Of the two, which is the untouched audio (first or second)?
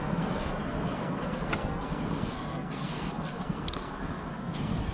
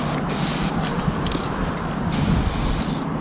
second